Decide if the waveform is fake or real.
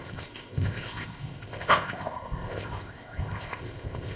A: fake